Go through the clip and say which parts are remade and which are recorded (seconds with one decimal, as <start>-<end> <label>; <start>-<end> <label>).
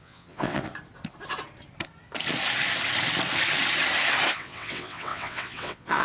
0.0-0.7 remade; 0.7-4.3 recorded; 4.3-6.0 remade